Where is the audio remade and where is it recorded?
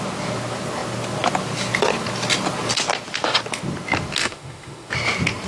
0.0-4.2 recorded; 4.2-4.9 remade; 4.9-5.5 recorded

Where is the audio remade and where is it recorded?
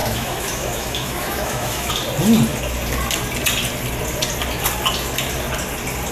0.0-1.9 remade; 1.9-6.1 recorded